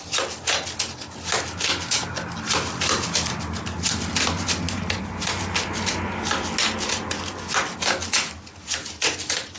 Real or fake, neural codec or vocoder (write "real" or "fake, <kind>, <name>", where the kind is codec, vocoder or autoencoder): real